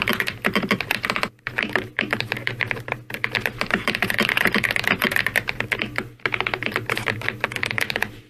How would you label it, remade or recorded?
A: recorded